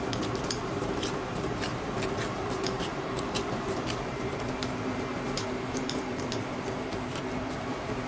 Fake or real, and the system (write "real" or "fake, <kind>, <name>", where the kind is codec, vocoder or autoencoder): fake, vocoder, BigVGAN v2